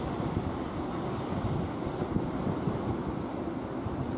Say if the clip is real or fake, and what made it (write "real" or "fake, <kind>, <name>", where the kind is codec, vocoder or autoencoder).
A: real